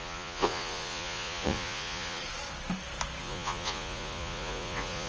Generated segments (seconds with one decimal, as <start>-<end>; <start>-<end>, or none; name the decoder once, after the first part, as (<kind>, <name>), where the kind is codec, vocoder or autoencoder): 0.0-2.2 (vocoder, Vocos); 3.2-5.1